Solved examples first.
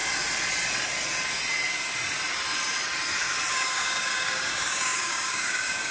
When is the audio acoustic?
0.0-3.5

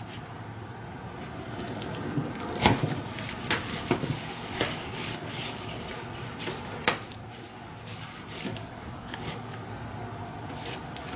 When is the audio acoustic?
0.0-3.7; 5.9-7.5; 9.7-11.2